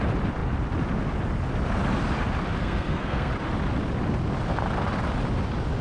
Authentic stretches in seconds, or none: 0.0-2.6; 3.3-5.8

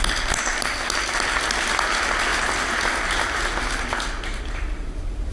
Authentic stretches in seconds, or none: 0.0-5.3